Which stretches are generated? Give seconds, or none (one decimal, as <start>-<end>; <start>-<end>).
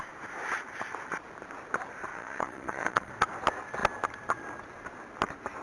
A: 2.1-3.1